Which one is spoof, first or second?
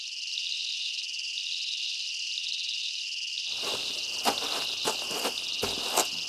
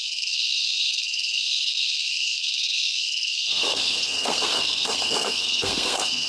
second